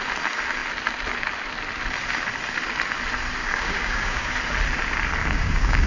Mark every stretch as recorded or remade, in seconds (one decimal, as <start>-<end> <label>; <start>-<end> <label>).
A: 0.0-3.4 recorded; 3.4-4.3 remade; 4.3-5.2 recorded; 5.2-5.9 remade